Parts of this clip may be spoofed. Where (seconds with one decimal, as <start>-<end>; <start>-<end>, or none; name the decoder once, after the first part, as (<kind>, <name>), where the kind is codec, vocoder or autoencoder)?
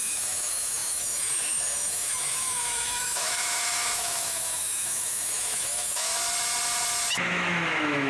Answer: 0.0-6.1 (autoencoder, DAC-VAE); 7.1-8.1